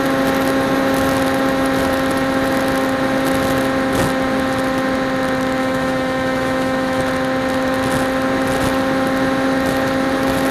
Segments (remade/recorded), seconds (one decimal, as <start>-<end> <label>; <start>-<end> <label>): 0.0-5.6 recorded; 5.6-7.0 remade; 7.0-10.5 recorded